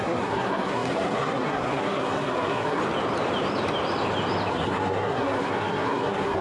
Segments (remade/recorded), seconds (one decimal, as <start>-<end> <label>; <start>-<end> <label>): 0.0-2.8 remade; 2.8-4.5 recorded; 4.5-6.4 remade